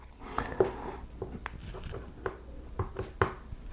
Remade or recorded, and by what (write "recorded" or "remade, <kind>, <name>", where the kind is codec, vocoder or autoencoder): recorded